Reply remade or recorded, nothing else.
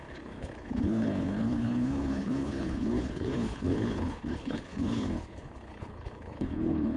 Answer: remade